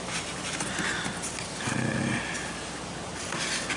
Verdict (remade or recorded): recorded